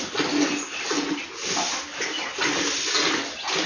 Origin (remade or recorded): recorded